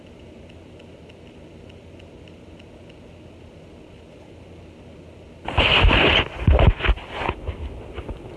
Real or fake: real